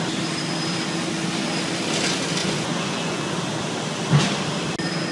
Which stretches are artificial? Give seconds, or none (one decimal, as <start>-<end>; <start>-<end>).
2.4-3.3

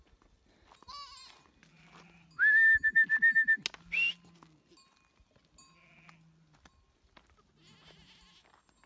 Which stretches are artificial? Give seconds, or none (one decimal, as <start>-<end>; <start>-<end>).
none

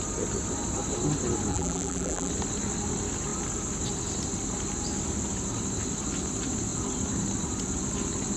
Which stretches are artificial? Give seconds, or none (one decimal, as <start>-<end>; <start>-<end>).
1.5-2.3

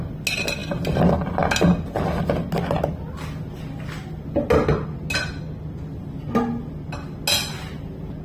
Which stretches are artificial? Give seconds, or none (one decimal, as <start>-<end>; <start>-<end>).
none

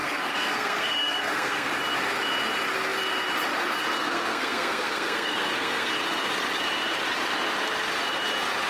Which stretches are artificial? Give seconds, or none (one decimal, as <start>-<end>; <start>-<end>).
0.0-1.7; 4.0-5.9

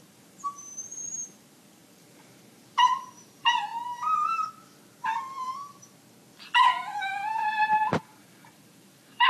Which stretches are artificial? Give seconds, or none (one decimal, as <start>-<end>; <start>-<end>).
0.0-3.7; 7.5-9.3